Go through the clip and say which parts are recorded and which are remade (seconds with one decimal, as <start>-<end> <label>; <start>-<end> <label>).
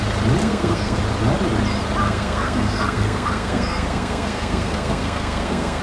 0.0-0.4 recorded; 0.4-1.0 remade; 1.0-2.0 recorded; 2.0-5.8 remade